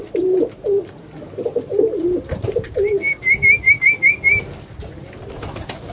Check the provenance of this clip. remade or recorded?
remade